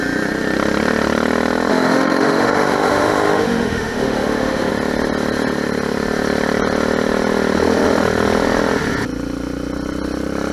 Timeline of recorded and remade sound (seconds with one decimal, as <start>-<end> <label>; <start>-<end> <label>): 0.0-1.7 recorded; 1.7-4.7 remade; 4.7-10.5 recorded